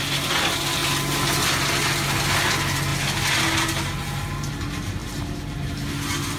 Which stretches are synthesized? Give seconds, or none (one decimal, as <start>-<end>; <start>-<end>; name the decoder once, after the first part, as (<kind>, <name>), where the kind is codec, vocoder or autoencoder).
none